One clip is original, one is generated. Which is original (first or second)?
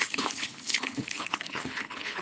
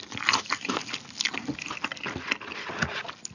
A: second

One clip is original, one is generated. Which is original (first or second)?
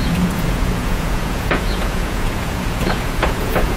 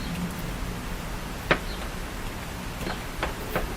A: second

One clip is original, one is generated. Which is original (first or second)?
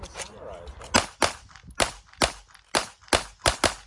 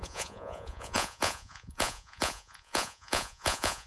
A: first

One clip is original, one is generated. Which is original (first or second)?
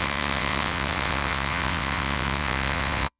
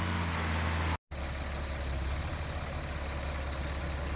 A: second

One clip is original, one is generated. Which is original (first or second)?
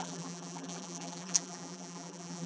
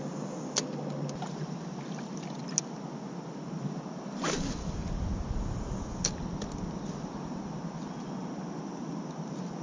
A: second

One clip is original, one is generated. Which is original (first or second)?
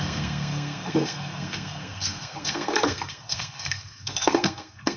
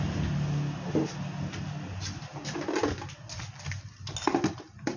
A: second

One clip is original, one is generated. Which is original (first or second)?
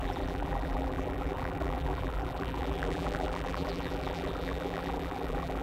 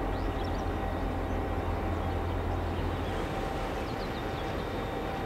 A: second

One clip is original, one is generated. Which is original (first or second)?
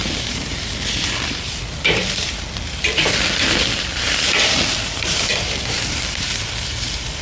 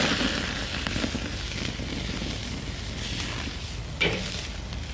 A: second